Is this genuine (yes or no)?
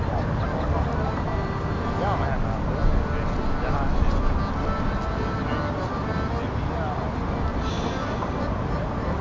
yes